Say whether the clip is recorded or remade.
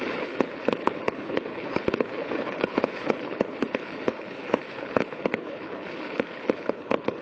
remade